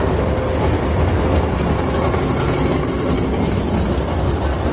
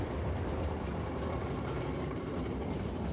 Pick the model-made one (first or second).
second